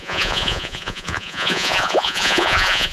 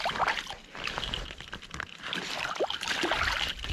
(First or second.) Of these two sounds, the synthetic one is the first